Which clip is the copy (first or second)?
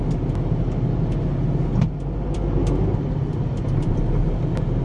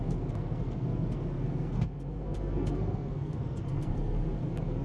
second